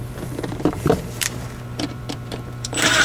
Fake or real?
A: fake